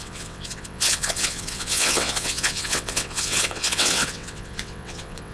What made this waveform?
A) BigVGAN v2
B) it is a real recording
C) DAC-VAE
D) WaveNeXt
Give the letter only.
D